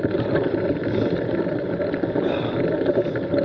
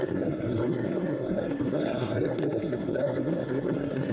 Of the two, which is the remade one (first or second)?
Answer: second